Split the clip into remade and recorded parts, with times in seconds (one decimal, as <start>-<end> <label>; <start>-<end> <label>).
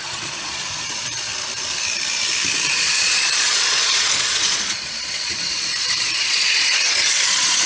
0.0-1.3 remade; 1.3-2.7 recorded; 2.7-7.7 remade